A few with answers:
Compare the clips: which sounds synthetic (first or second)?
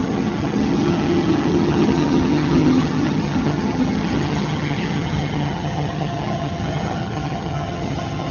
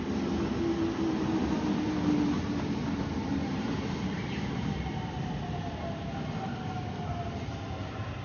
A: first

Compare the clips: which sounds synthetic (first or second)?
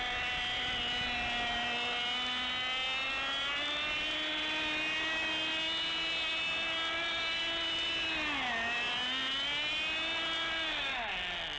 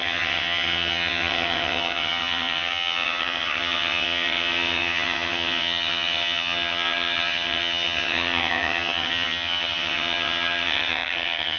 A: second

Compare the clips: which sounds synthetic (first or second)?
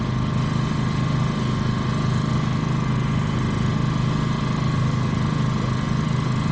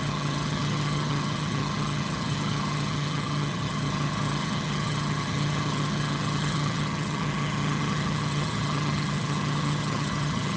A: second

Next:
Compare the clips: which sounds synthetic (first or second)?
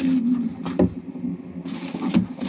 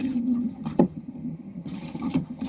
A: second